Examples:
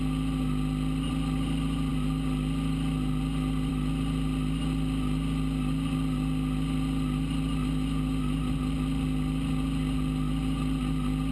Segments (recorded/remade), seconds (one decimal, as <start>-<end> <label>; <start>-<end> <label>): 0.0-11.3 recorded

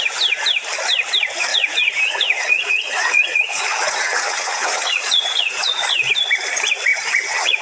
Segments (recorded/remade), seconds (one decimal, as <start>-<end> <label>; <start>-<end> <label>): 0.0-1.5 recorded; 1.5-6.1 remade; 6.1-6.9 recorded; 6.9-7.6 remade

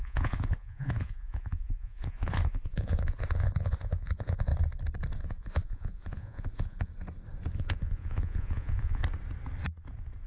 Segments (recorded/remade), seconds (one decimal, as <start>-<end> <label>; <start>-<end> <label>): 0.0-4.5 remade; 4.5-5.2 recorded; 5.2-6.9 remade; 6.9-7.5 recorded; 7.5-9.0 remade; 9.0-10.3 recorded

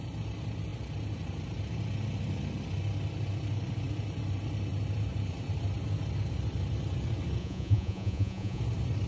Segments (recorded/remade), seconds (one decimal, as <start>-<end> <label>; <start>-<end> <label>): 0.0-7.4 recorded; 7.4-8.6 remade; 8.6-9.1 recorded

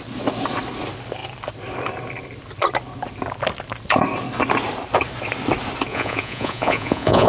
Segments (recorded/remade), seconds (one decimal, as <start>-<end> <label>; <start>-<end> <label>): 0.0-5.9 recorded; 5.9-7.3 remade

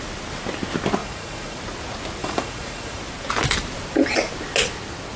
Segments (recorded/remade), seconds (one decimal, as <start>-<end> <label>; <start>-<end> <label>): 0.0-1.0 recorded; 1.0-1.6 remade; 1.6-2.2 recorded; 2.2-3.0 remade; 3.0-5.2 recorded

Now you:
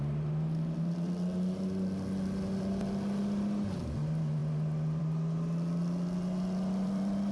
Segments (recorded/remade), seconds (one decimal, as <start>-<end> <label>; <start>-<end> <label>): 0.0-7.3 recorded

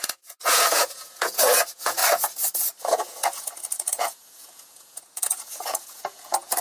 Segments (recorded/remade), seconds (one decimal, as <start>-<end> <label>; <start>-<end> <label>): 0.0-2.0 remade; 2.0-2.8 recorded; 2.8-6.6 remade